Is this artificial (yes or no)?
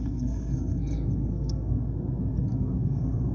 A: yes